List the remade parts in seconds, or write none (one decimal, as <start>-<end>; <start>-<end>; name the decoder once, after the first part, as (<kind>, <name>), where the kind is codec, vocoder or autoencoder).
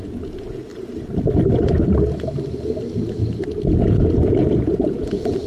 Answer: 0.0-0.7 (vocoder, Vocos); 3.9-5.5